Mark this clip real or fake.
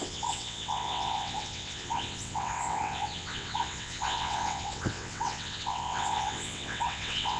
fake